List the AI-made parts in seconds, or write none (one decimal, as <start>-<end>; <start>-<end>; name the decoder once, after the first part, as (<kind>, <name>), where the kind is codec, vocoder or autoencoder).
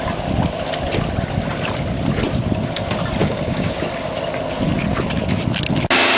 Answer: 3.2-3.7 (codec, DAC)